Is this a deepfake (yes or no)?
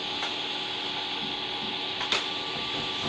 no